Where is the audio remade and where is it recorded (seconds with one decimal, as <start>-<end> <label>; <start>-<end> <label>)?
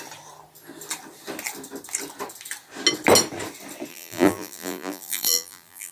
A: 0.0-3.9 recorded; 3.9-5.9 remade